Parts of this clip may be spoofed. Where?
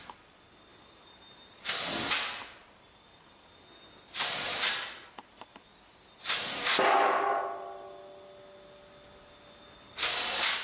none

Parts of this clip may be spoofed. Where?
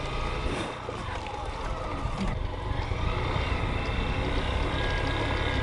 none